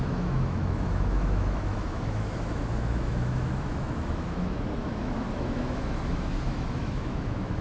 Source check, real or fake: fake